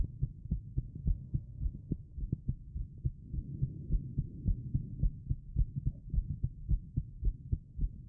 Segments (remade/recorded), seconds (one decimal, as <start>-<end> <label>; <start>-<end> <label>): 0.0-8.1 recorded

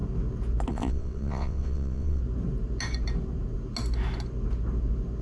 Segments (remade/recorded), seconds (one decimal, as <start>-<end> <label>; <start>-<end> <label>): 0.0-0.7 recorded; 0.7-2.2 remade; 2.2-5.2 recorded

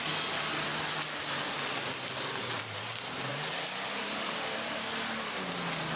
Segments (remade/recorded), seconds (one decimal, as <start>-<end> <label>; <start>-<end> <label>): 0.0-6.0 recorded